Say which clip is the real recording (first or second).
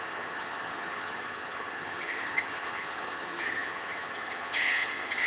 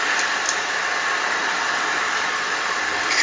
second